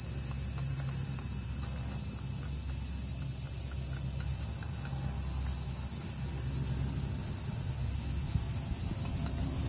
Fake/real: real